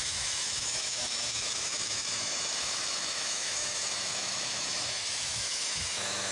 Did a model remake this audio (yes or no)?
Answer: yes